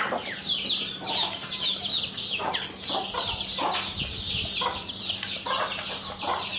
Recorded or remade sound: recorded